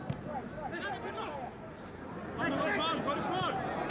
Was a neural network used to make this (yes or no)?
no